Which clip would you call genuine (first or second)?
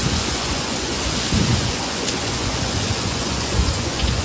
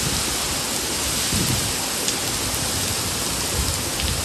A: second